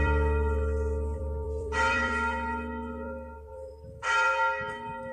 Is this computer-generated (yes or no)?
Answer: yes